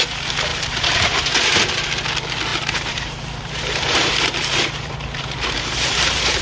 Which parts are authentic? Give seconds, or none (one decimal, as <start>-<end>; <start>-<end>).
0.0-0.5; 1.2-2.5

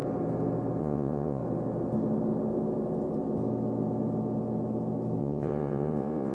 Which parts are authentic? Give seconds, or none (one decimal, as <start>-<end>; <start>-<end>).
0.0-0.8; 1.4-5.2

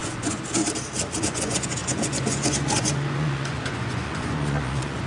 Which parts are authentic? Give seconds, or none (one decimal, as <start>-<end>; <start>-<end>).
0.6-1.2